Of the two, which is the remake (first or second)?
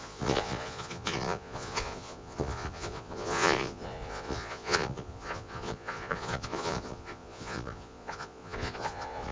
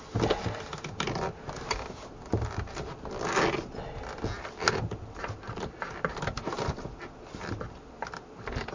first